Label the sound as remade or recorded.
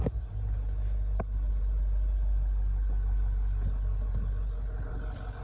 recorded